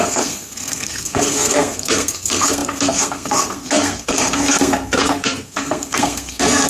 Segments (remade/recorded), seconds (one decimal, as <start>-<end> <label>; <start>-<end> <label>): 0.0-6.7 remade